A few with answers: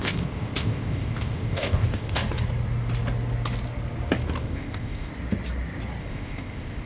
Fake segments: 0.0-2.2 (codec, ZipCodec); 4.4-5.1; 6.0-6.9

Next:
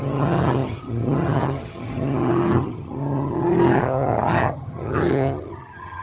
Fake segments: 0.0-6.0 (vocoder, HiFi-GAN)

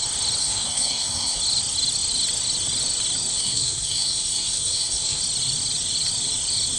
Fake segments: 0.4-1.4 (codec, SNAC); 3.3-5.2

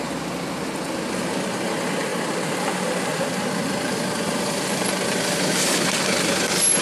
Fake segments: none

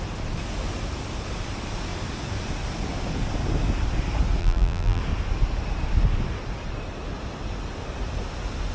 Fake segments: 4.4-5.0 (vocoder, BigVGAN v2)

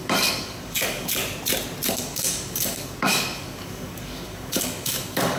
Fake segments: 0.0-1.2 (codec, DAC); 1.9-5.4